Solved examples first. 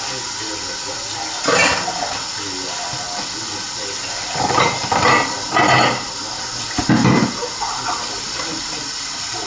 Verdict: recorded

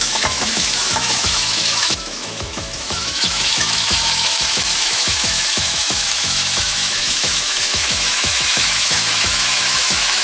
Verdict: remade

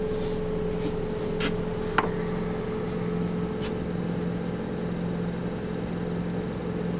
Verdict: recorded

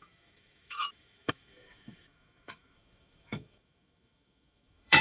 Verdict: remade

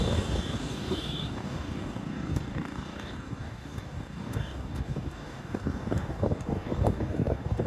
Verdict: remade